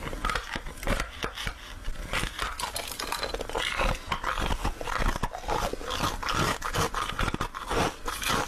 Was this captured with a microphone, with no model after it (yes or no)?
yes